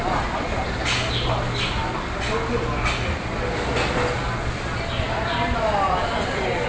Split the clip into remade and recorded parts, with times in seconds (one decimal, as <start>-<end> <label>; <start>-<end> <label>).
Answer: 0.0-6.7 recorded